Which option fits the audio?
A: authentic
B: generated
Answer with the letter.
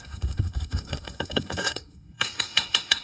B